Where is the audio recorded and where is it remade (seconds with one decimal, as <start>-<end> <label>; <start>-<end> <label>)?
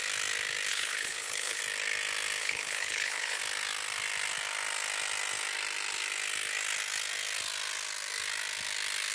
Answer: 0.0-0.7 recorded; 0.7-1.6 remade; 1.6-2.4 recorded; 2.4-3.4 remade; 3.4-9.1 recorded